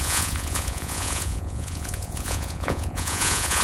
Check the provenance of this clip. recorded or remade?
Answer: remade